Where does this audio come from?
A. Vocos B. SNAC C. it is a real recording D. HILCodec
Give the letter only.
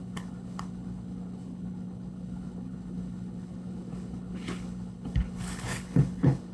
D